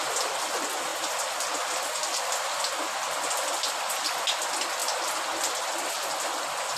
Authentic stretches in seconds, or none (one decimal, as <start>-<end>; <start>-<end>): 0.0-4.8; 6.0-6.8